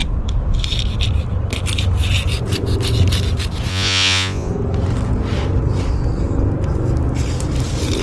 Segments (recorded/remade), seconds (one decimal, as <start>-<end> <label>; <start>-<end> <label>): 0.0-3.7 recorded; 3.7-4.5 remade; 4.5-8.0 recorded